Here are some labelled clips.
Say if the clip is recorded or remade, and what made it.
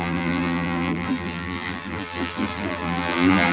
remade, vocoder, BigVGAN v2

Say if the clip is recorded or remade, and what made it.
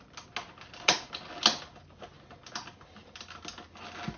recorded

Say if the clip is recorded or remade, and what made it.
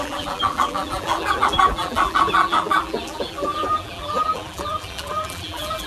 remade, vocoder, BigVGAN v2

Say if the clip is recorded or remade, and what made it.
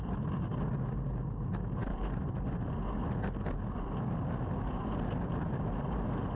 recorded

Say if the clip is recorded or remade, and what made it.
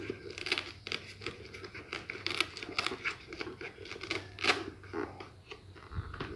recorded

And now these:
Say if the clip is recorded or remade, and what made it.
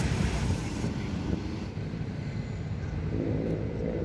remade, vocoder, BigVGAN v2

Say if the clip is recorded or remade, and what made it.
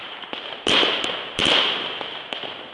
remade, vocoder, BigVGAN v2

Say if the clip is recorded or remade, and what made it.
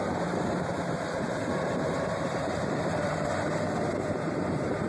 remade, vocoder, BigVGAN v2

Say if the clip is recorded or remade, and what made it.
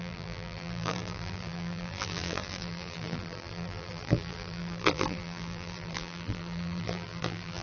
remade, vocoder, BigVGAN v2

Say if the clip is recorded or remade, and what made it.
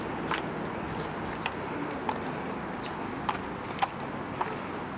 recorded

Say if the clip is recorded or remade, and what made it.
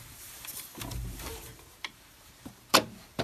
remade, vocoder, BigVGAN v2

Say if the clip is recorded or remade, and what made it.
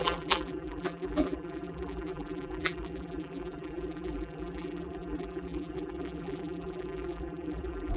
remade, vocoder, BigVGAN v2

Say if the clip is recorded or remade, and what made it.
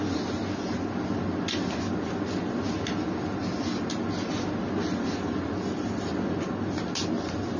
recorded